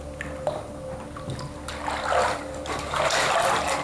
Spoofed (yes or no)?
no